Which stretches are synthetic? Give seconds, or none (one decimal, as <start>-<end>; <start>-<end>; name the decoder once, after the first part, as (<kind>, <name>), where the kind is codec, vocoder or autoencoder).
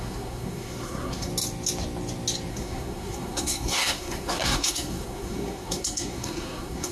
0.0-1.3 (codec, SNAC); 2.5-6.9